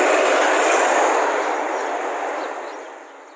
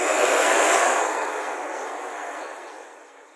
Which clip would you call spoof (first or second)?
second